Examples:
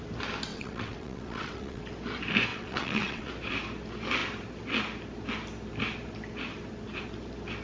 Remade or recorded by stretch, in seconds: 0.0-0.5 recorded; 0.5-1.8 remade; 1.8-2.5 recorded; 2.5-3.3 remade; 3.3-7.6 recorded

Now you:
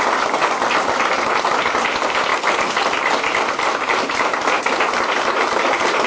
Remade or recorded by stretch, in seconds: 0.0-6.1 recorded

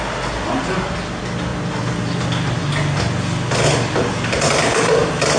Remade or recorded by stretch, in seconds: 0.0-5.4 recorded

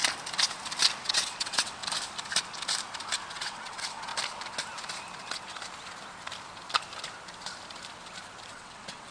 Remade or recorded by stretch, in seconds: 0.0-1.0 recorded; 1.0-1.8 remade; 1.8-3.3 recorded; 3.3-4.1 remade; 4.1-8.5 recorded; 8.5-9.1 remade

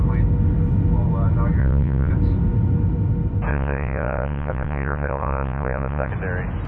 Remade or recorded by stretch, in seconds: 0.0-1.6 recorded; 1.6-2.1 remade; 2.1-3.5 recorded; 3.5-6.1 remade; 6.1-6.7 recorded

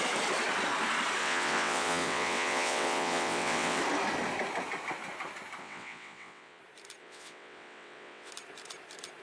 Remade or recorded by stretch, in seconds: 0.0-1.2 recorded; 1.2-3.8 remade; 3.8-5.6 recorded; 5.6-6.6 remade; 6.6-7.0 recorded; 7.0-8.3 remade; 8.3-9.2 recorded